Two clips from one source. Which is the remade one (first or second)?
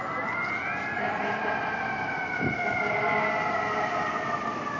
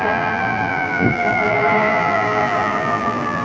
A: second